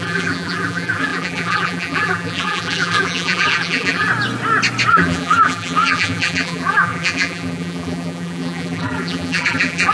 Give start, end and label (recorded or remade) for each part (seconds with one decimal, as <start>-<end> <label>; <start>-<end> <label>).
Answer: 0.0-4.1 remade; 4.1-4.9 recorded; 4.9-9.9 remade

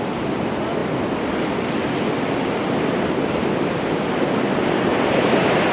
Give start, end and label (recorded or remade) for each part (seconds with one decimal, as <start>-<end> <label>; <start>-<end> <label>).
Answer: 0.0-4.9 recorded; 4.9-5.7 remade

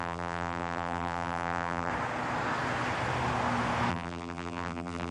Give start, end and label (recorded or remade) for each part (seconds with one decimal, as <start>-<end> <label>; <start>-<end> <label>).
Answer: 0.0-1.9 remade; 1.9-3.9 recorded; 3.9-5.1 remade